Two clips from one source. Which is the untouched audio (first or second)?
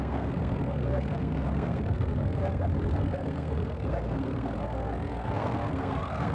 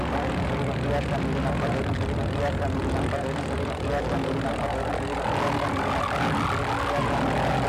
second